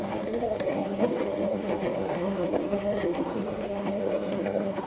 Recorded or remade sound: remade